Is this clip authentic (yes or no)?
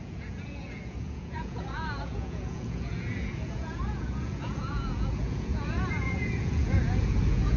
no